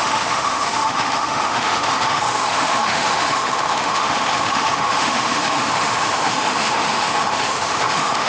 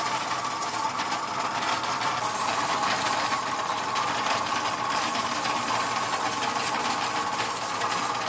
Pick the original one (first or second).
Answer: second